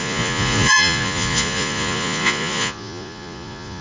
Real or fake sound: fake